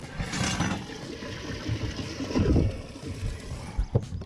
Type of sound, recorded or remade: recorded